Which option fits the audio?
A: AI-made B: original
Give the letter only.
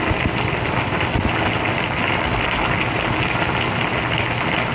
B